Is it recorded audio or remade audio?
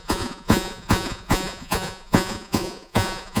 remade